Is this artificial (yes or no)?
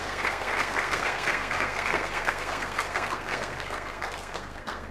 yes